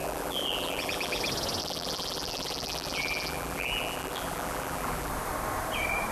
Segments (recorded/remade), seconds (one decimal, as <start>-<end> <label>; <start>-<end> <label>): 0.0-1.2 remade; 1.2-1.6 recorded; 1.6-5.1 remade; 5.1-6.1 recorded

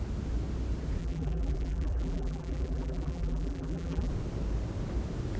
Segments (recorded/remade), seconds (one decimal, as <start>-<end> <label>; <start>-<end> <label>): 0.0-1.0 recorded; 1.0-4.1 remade; 4.1-5.4 recorded

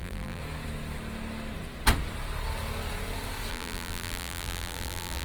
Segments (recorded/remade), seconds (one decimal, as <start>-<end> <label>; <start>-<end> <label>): 0.0-0.4 remade; 0.4-3.5 recorded; 3.5-5.2 remade

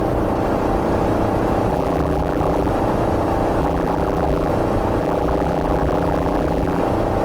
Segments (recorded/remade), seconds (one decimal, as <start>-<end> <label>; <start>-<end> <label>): 0.0-1.7 recorded; 1.7-2.7 remade; 2.7-3.6 recorded; 3.6-4.5 remade; 4.5-5.0 recorded; 5.0-6.8 remade; 6.8-7.2 recorded

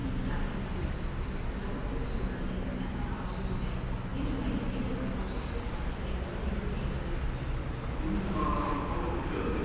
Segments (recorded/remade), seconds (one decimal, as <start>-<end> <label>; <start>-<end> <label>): 0.0-9.6 recorded

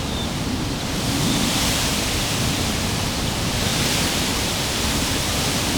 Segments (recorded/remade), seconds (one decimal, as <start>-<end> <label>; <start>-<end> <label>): 0.0-5.8 remade

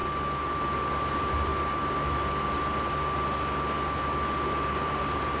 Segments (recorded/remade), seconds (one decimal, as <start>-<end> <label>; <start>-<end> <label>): 0.0-1.1 recorded; 1.1-1.5 remade; 1.5-4.7 recorded; 4.7-5.4 remade